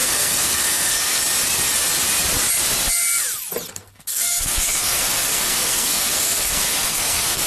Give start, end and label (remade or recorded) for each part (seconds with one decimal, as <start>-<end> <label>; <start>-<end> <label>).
0.0-1.2 remade; 1.2-3.7 recorded; 3.7-7.5 remade